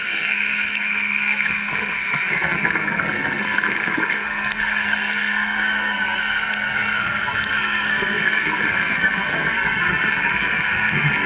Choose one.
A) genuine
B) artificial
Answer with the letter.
B